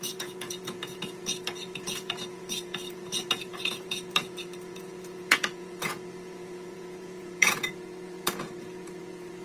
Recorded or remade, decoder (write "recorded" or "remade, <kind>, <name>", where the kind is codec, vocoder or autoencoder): remade, vocoder, Vocos